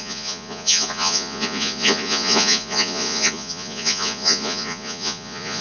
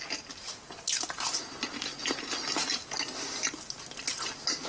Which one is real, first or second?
second